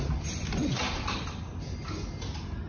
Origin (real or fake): real